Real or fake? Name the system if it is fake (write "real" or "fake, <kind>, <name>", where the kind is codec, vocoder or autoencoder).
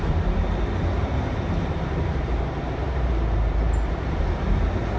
fake, vocoder, BigVGAN v2